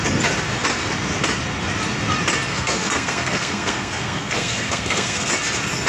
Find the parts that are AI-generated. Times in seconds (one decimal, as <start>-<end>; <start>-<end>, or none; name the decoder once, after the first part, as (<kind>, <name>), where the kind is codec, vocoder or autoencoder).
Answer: 2.5-5.3 (codec, SNAC)